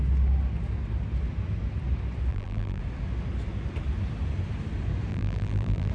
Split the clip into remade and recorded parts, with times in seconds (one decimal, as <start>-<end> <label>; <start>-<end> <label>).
0.0-2.3 recorded; 2.3-2.8 remade; 2.8-5.1 recorded; 5.1-5.9 remade